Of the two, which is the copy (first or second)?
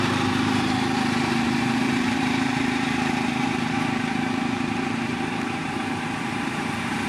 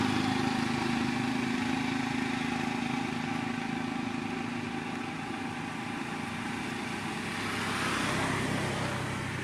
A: first